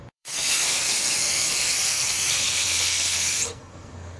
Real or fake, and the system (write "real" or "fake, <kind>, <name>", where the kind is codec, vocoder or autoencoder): fake, codec, SNAC